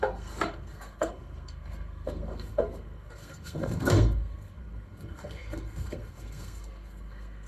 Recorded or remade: remade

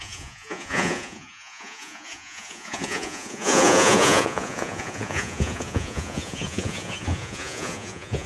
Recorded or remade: remade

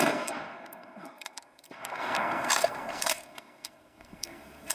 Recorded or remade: remade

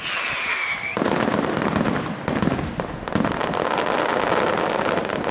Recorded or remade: recorded